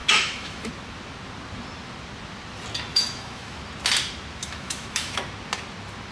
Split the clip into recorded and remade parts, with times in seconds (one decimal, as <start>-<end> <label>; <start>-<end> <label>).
0.0-0.7 remade; 0.7-2.9 recorded; 2.9-3.6 remade; 3.6-4.4 recorded; 4.4-5.2 remade; 5.2-6.1 recorded